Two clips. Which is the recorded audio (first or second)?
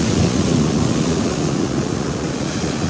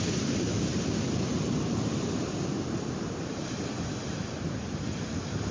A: second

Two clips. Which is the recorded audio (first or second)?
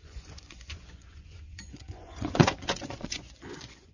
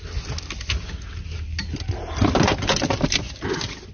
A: second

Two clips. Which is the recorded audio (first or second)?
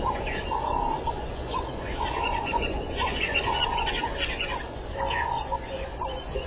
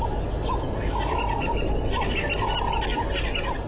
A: second